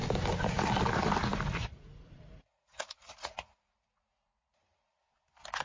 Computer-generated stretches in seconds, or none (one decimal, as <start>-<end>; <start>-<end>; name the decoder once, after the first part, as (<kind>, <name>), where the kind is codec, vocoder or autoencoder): 1.6-5.0 (vocoder, Vocos)